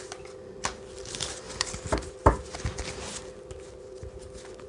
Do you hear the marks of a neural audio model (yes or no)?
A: no